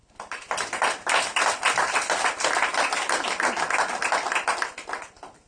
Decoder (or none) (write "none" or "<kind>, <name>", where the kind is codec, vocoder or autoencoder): none